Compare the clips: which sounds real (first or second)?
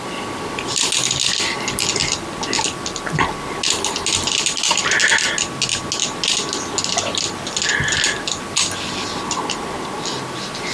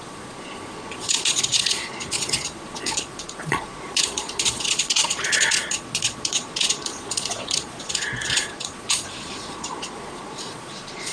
first